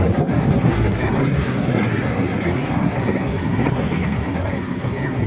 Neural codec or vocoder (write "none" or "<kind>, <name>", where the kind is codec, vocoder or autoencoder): codec, SNAC